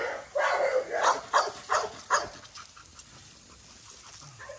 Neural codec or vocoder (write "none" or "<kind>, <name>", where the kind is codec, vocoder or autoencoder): none